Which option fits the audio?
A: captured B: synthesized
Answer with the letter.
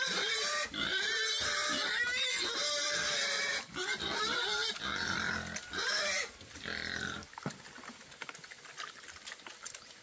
A